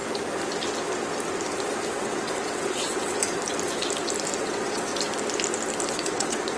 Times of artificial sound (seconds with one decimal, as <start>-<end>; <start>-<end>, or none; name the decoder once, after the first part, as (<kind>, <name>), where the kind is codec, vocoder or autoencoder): 1.9-3.2 (vocoder, WaveNeXt); 4.4-4.9; 5.9-6.6